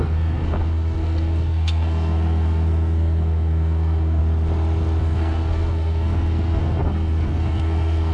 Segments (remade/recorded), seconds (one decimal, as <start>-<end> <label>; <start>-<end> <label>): 0.0-4.2 remade; 4.2-5.0 recorded; 5.0-8.1 remade